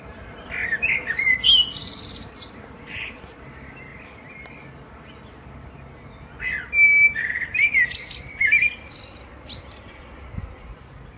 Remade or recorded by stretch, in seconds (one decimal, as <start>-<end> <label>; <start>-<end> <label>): 0.0-11.2 recorded